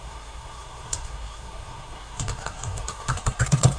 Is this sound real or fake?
fake